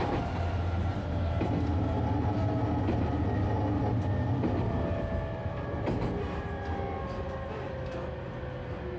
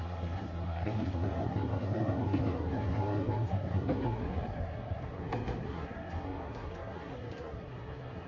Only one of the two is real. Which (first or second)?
first